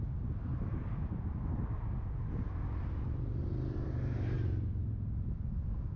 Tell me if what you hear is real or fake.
real